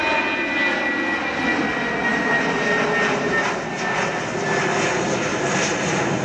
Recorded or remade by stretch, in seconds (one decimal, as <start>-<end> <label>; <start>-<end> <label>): 0.0-2.1 recorded; 2.1-2.6 remade; 2.6-5.3 recorded; 5.3-6.2 remade